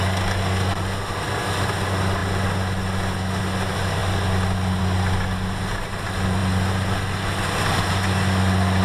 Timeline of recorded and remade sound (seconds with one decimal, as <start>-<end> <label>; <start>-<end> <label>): 0.0-8.8 recorded